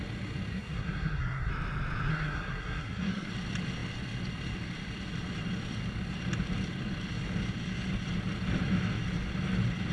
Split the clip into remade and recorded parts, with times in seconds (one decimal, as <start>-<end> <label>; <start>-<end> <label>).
0.0-0.5 recorded; 0.5-1.5 remade; 1.5-2.1 recorded; 2.1-3.3 remade; 3.3-9.9 recorded